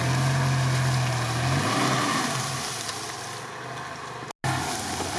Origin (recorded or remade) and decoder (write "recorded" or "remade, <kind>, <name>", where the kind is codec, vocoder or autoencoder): recorded